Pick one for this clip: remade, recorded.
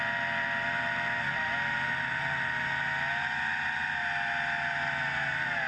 recorded